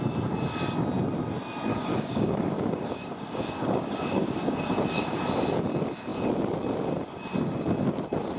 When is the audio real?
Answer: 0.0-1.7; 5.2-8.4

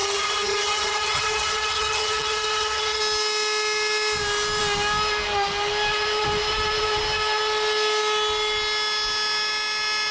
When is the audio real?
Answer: 3.0-10.1

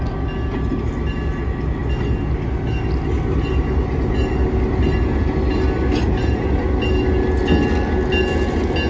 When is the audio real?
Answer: 0.0-6.0; 6.6-8.9

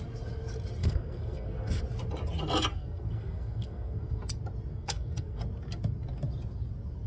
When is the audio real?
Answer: 0.0-0.8; 1.8-2.7; 4.2-4.7; 5.4-7.1

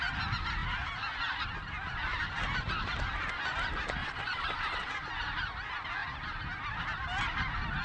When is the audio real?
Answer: 0.0-4.0; 4.9-7.8

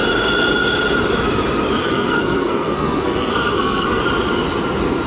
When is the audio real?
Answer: 0.0-1.8; 4.0-5.1